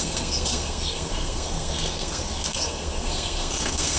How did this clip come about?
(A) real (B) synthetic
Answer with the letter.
B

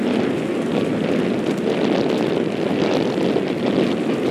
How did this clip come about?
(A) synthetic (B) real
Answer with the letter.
B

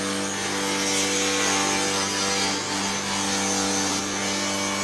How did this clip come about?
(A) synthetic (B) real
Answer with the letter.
B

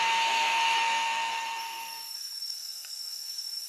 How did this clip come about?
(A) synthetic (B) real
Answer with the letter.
A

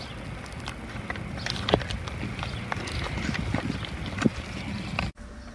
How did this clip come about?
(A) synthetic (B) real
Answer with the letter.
B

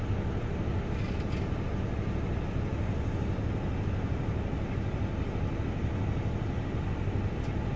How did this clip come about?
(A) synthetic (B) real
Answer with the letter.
B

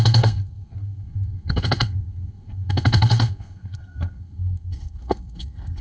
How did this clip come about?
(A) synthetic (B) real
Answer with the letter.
A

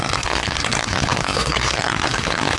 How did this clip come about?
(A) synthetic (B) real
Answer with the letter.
A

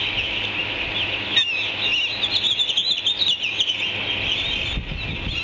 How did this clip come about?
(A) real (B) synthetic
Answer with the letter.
A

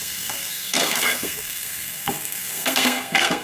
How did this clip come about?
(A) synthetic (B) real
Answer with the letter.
A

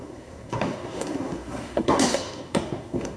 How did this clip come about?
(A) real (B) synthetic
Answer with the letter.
B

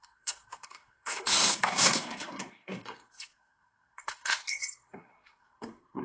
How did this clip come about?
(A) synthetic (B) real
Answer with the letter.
A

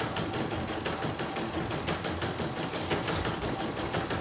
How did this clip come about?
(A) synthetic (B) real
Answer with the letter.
B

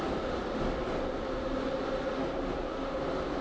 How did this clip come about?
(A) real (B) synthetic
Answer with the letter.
A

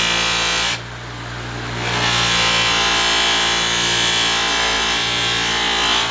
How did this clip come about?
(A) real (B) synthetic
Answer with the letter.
A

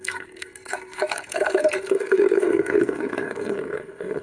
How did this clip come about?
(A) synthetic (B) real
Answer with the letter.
A